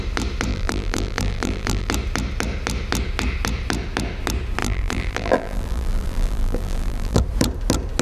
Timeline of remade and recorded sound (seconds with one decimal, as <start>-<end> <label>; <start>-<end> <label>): 0.0-0.5 recorded; 0.5-1.9 remade; 1.9-4.6 recorded; 4.6-7.2 remade; 7.2-8.0 recorded